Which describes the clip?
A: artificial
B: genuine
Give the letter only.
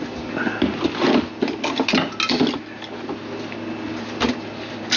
B